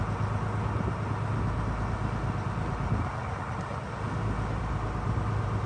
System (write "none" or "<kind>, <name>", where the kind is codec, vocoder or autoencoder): none